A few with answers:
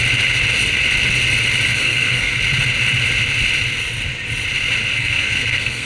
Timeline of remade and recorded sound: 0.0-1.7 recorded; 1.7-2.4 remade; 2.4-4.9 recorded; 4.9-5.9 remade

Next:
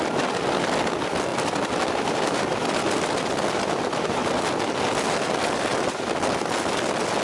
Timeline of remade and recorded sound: 0.0-1.3 recorded; 1.3-3.1 remade; 3.1-7.2 recorded

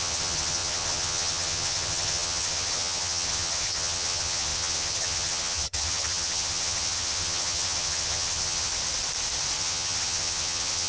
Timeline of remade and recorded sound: 0.0-8.7 remade; 8.7-9.6 recorded; 9.6-10.9 remade

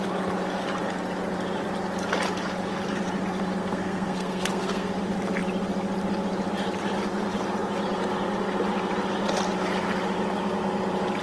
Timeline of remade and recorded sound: 0.0-3.6 recorded; 3.6-4.9 remade; 4.9-11.2 recorded

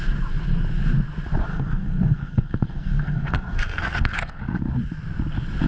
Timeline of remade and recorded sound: 0.0-1.5 recorded; 1.5-4.6 remade; 4.6-5.7 recorded

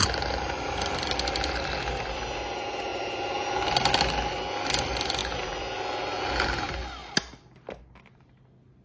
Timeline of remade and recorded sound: 0.0-8.8 recorded